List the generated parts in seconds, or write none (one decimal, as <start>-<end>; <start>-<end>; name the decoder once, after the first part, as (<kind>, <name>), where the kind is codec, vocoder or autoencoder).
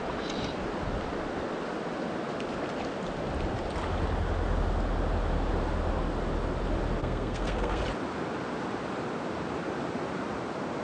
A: 7.0-7.8 (codec, SNAC)